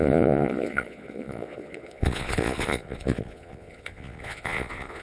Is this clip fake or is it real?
fake